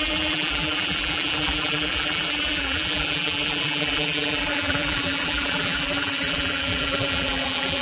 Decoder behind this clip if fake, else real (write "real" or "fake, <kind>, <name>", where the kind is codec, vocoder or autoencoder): fake, vocoder, BigVGAN v2